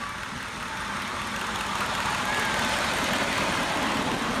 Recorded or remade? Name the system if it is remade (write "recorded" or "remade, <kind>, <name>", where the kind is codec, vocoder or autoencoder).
recorded